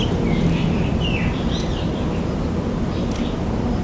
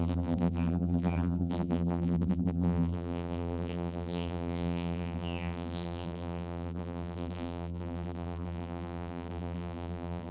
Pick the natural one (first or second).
first